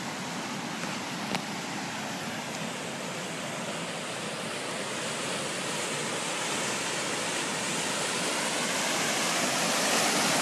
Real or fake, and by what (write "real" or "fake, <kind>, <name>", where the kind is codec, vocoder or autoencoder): real